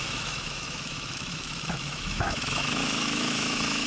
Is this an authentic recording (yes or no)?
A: no